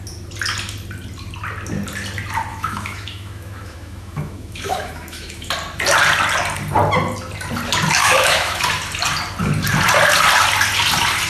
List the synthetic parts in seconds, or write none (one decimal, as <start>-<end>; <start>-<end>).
2.5-5.5; 8.0-8.6